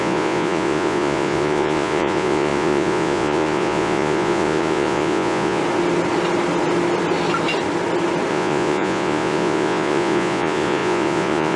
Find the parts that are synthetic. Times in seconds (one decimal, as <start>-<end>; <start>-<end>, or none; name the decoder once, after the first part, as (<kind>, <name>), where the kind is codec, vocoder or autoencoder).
0.0-5.6 (vocoder, Vocos); 8.3-11.6